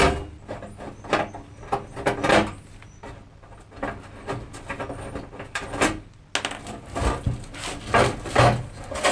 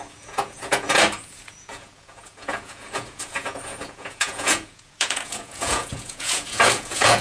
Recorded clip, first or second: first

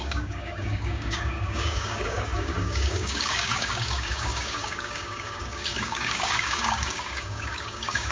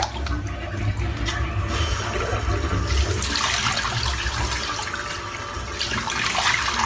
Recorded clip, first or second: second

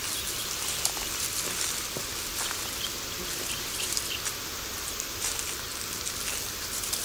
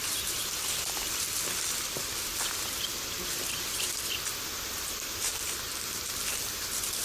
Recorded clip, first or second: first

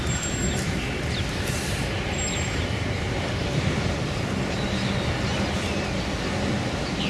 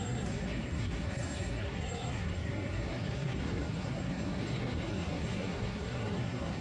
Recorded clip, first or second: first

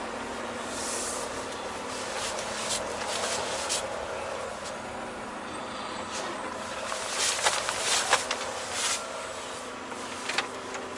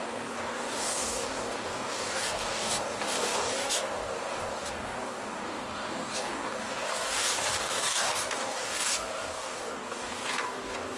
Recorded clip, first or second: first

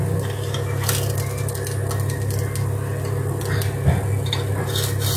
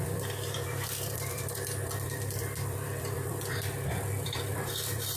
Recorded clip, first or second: first